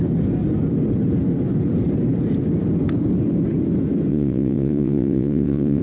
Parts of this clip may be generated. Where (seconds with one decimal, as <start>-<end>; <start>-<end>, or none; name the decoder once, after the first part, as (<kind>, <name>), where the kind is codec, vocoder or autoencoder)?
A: 4.1-5.8 (vocoder, WaveNeXt)